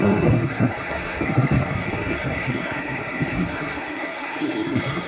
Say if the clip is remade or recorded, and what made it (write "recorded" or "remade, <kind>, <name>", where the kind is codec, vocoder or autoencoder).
remade, codec, SNAC